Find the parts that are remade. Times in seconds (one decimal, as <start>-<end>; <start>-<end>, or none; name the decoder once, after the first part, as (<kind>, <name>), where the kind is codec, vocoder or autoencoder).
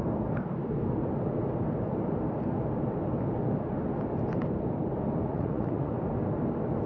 5.3-5.9 (vocoder, Vocos)